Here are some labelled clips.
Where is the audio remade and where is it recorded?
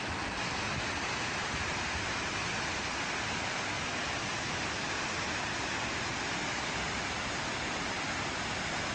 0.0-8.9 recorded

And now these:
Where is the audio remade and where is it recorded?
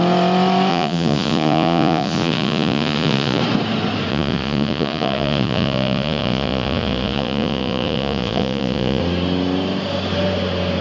0.0-0.7 recorded; 0.7-3.4 remade; 3.4-4.1 recorded; 4.1-9.0 remade; 9.0-10.8 recorded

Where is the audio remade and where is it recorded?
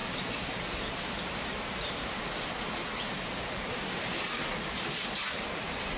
0.0-2.2 remade; 2.2-6.0 recorded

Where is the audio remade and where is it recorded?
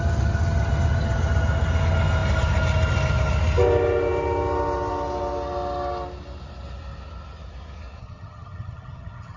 0.0-8.0 recorded; 8.0-9.4 remade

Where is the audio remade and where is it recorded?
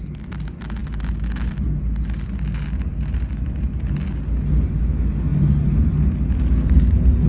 0.0-7.3 recorded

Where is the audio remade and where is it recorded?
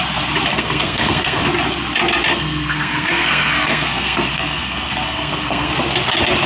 0.0-0.5 recorded; 0.5-1.4 remade; 1.4-2.3 recorded; 2.3-5.7 remade; 5.7-6.5 recorded